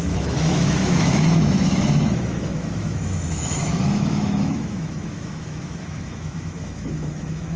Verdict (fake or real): fake